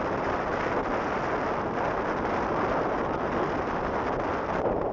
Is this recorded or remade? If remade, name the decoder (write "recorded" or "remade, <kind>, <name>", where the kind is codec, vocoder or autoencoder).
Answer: recorded